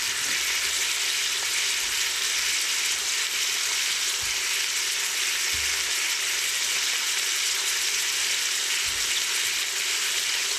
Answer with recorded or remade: recorded